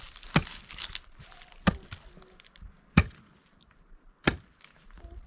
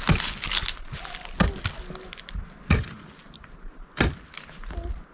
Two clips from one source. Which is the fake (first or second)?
first